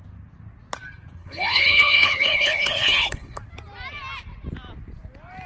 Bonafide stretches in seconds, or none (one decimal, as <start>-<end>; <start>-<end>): 0.0-1.2; 3.4-5.5